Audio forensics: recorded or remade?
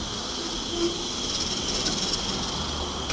recorded